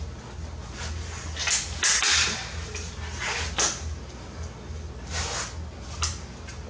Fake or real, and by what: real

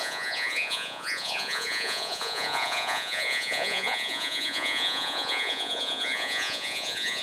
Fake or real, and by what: fake, vocoder, Vocos